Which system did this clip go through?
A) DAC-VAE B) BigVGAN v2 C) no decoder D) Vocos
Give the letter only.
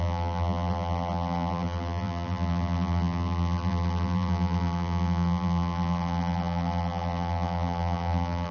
B